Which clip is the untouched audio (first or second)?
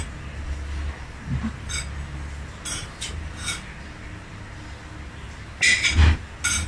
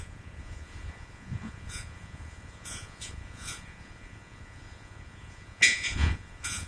first